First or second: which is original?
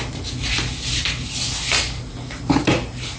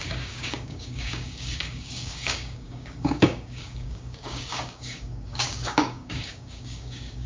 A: first